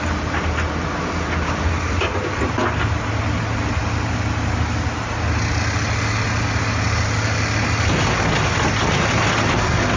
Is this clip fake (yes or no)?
no